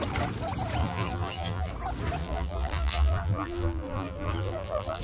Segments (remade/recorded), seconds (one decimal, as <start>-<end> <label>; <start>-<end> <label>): 0.0-0.8 recorded; 0.8-1.7 remade; 1.7-2.2 recorded; 2.2-5.0 remade